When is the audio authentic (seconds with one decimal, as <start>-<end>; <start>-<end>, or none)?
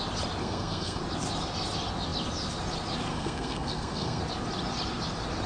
0.0-0.4; 1.0-3.1; 4.2-5.5